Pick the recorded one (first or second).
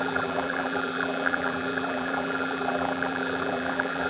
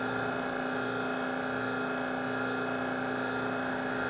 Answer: second